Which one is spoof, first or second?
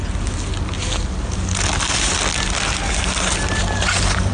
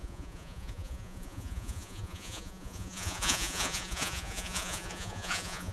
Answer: second